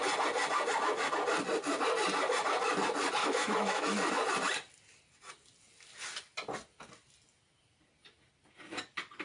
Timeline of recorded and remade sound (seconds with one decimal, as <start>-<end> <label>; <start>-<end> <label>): 0.0-3.2 recorded; 3.2-4.1 remade; 4.1-9.2 recorded